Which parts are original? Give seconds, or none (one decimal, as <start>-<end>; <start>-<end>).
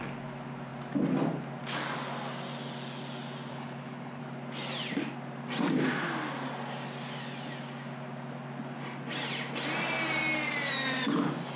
0.0-3.5; 4.2-11.6